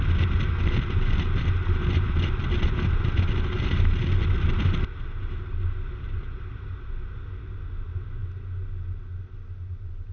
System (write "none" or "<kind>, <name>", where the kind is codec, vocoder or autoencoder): none